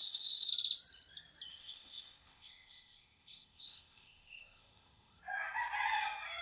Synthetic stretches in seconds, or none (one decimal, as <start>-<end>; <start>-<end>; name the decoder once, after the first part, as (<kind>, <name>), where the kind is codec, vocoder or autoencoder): 0.0-0.5 (codec, ZipCodec); 1.5-5.2